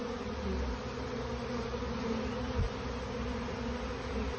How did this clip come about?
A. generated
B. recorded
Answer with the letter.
B